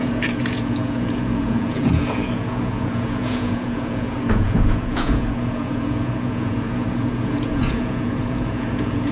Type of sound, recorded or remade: remade